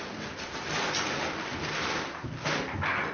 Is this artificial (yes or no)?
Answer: no